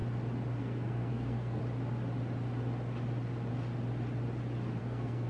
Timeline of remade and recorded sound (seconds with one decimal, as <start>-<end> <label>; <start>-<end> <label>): 0.0-0.6 recorded; 0.6-1.6 remade; 1.6-4.8 recorded; 4.8-5.3 remade